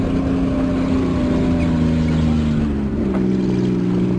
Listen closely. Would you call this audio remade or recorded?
recorded